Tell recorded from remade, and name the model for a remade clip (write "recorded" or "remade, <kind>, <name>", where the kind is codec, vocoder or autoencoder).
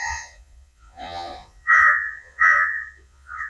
remade, vocoder, Vocos